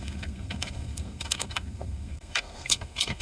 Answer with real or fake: fake